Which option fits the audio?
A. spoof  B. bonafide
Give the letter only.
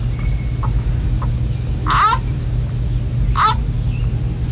B